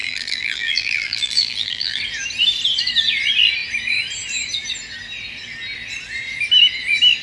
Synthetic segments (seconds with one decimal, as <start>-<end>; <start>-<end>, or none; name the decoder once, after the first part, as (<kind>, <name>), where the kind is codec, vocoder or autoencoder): 0.0-2.0 (vocoder, BigVGAN v2)

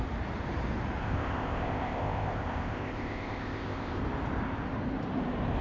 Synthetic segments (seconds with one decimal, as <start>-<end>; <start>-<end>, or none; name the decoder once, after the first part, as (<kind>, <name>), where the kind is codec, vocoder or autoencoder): 1.0-4.0 (codec, ZipCodec)